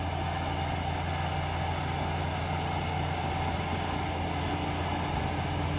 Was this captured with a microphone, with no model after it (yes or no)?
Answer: yes